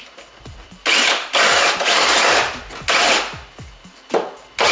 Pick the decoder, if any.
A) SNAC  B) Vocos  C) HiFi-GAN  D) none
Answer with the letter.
D